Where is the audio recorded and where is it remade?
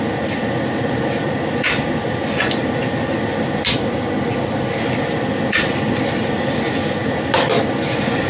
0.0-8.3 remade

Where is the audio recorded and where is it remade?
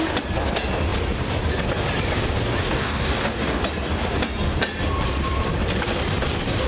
0.0-2.6 recorded; 2.6-3.6 remade; 3.6-6.7 recorded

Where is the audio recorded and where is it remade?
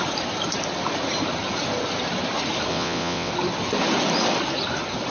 0.0-2.7 recorded; 2.7-3.3 remade; 3.3-5.1 recorded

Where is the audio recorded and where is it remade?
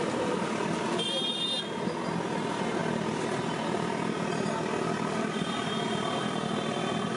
0.0-7.2 recorded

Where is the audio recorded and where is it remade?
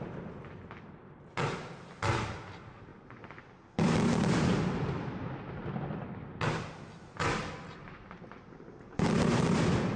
0.0-10.0 recorded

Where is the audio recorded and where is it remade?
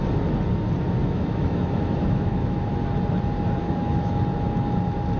0.0-1.0 recorded; 1.0-2.7 remade; 2.7-3.6 recorded; 3.6-4.2 remade; 4.2-5.2 recorded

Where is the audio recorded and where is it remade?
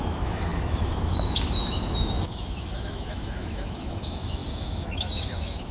0.0-5.7 remade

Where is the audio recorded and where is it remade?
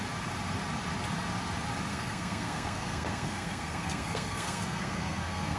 0.0-1.9 recorded; 1.9-5.6 remade